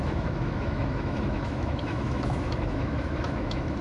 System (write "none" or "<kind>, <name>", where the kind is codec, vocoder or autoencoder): autoencoder, DAC-VAE